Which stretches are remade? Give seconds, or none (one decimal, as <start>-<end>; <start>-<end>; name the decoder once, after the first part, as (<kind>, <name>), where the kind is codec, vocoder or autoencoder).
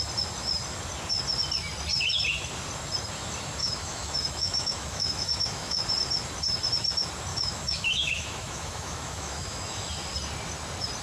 3.6-5.8 (autoencoder, DAC-VAE); 7.3-9.9